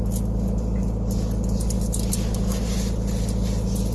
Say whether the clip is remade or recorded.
recorded